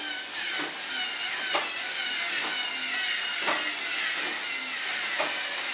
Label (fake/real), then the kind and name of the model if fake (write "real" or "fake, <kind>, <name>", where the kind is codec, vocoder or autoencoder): real